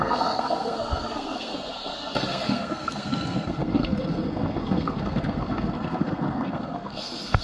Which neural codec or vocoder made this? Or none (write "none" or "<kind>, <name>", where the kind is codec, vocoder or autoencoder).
codec, SNAC